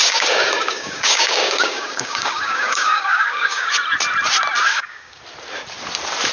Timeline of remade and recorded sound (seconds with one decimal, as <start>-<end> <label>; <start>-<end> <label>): 0.0-3.7 remade; 3.7-4.7 recorded; 4.7-5.2 remade; 5.2-6.3 recorded